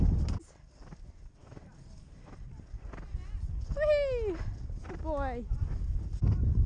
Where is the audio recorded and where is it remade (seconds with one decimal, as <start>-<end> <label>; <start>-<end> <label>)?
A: 0.0-6.7 recorded